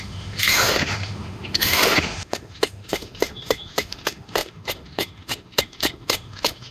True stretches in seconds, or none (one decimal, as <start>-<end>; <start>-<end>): none

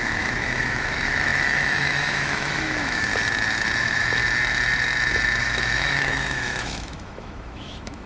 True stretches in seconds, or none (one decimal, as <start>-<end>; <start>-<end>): 3.1-3.8; 4.2-5.4

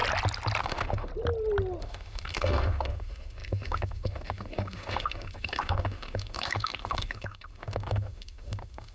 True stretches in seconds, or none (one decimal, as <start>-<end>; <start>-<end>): 0.0-0.6; 1.1-1.8

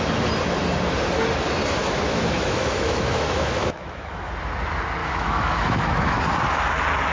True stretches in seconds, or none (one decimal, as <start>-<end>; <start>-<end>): 0.0-1.8; 4.3-5.0; 6.2-7.1

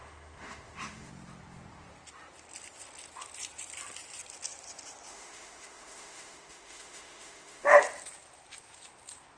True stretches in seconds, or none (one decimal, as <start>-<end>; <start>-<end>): 1.1-5.1; 7.8-9.4

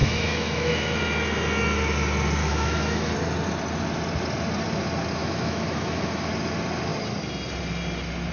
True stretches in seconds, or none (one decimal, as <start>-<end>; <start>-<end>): 1.0-2.4; 3.1-5.2; 6.3-8.3

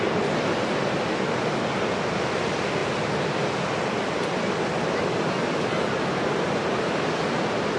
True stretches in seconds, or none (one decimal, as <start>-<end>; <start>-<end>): 0.0-7.8